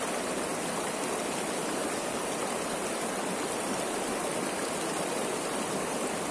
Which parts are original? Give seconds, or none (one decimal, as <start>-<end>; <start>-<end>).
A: 0.0-6.3

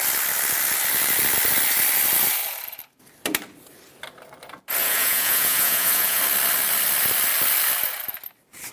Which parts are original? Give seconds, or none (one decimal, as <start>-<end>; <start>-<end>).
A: 0.0-4.8; 6.2-8.7

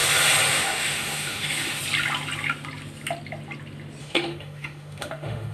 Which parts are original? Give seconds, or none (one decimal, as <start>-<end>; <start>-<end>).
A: 0.0-0.5; 1.8-4.0